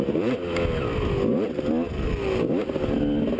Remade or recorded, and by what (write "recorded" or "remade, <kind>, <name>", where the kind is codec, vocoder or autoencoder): recorded